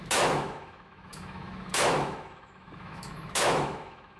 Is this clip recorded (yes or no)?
no